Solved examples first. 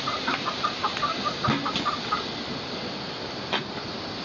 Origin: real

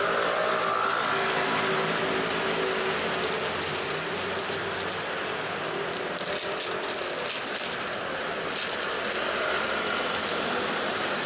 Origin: real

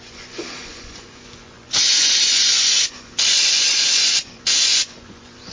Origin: fake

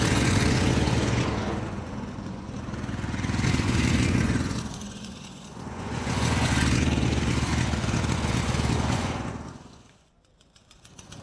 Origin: fake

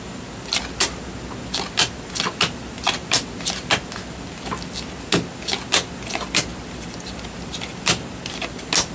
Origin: real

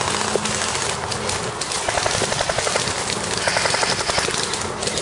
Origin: real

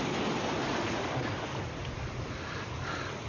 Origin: real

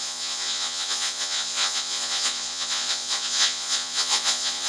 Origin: fake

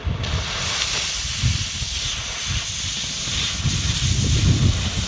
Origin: real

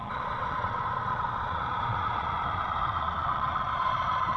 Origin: fake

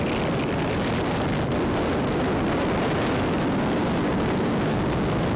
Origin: real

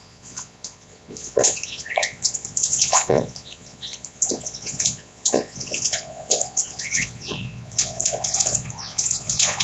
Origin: fake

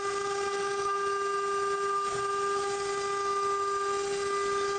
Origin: real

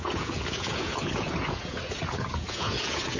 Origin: fake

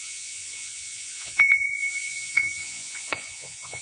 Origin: fake